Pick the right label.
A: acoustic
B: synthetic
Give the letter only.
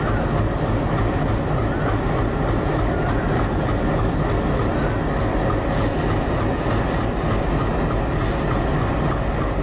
A